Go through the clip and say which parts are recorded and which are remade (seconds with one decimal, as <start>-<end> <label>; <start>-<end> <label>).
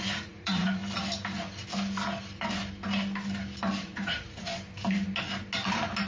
0.0-0.8 remade; 0.8-3.8 recorded; 3.8-4.5 remade; 4.5-6.1 recorded